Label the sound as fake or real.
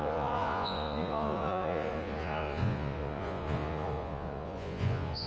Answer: fake